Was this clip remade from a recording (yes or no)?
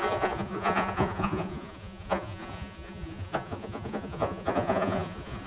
yes